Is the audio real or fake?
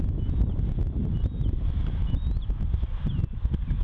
real